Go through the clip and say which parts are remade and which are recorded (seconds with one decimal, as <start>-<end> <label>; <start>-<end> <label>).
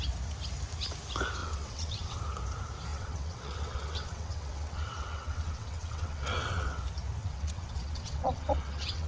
0.0-1.4 recorded; 1.4-2.2 remade; 2.2-2.9 recorded; 2.9-6.8 remade; 6.8-7.2 recorded; 7.2-9.1 remade